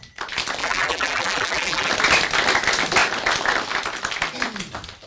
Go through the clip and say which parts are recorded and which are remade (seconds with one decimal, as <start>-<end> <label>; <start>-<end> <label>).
0.0-0.6 recorded; 0.6-1.9 remade; 1.9-5.1 recorded